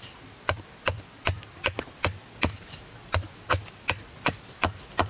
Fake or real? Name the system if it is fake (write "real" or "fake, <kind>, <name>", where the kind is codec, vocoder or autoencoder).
real